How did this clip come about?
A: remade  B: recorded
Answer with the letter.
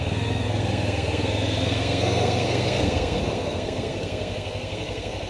A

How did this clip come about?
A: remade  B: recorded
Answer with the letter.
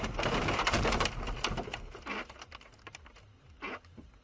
B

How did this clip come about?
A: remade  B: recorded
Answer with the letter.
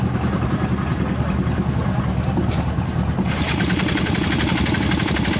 B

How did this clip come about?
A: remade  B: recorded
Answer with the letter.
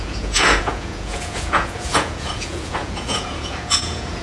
A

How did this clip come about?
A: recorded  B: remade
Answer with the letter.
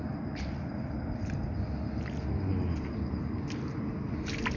A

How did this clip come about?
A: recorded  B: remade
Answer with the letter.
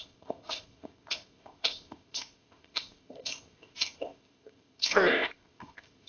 B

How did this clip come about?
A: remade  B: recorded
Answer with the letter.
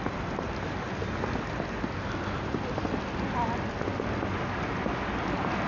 B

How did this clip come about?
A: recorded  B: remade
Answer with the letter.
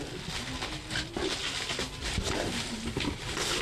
A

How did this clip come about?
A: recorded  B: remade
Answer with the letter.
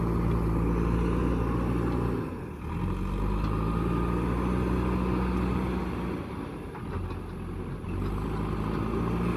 A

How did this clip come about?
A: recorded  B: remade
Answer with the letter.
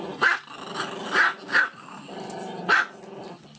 A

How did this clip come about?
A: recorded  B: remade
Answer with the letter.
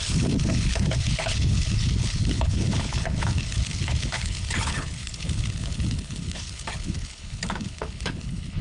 B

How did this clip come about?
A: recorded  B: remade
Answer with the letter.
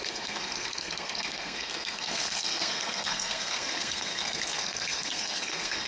B